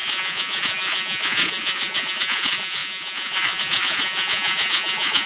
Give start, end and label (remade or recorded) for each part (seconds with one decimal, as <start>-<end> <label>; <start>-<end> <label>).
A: 0.0-5.3 remade